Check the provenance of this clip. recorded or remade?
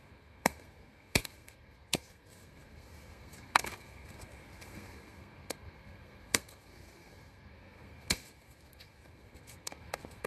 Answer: remade